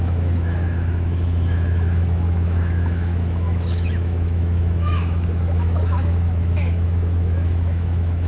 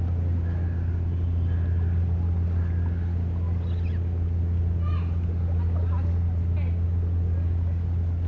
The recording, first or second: second